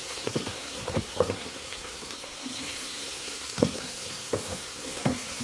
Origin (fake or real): fake